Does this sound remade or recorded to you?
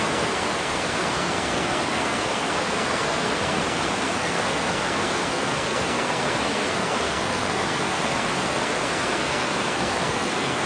remade